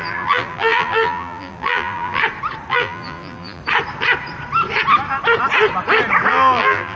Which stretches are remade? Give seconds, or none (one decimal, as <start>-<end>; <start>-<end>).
0.0-2.2; 2.7-3.6; 6.3-7.0